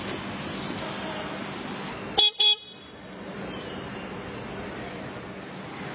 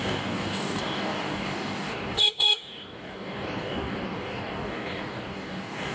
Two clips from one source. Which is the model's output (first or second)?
second